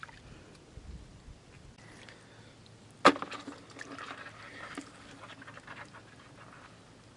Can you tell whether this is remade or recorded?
recorded